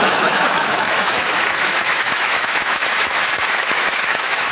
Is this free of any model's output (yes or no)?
no